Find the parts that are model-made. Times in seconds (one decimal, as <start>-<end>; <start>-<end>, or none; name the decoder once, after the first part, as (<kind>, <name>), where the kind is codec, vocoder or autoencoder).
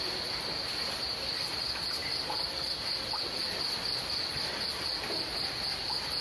none